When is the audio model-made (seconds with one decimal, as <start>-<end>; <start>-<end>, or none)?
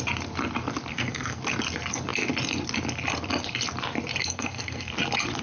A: 0.9-1.4; 4.2-4.9